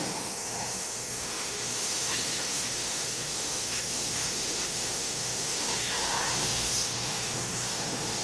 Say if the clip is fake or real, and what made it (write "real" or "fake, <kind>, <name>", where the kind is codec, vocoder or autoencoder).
fake, autoencoder, DAC-VAE